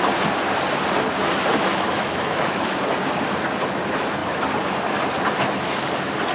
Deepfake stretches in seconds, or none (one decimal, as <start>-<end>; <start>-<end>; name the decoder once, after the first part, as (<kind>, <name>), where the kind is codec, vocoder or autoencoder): 1.6-2.8 (autoencoder, DAC-VAE)